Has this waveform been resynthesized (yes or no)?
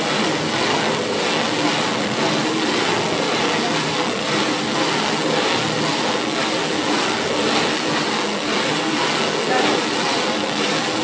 no